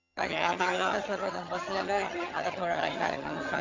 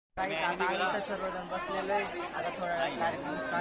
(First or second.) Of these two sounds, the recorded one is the second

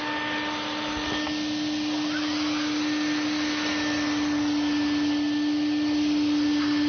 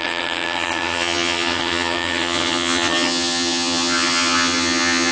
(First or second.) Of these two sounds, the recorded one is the first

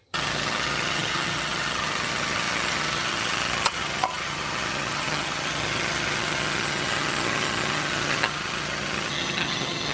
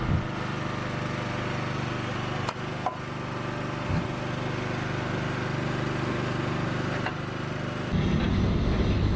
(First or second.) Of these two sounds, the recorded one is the second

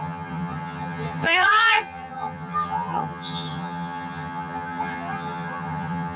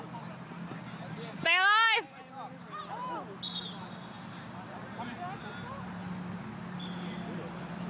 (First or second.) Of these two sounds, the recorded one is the second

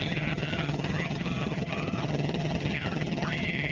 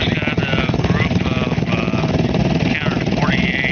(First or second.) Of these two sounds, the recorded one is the second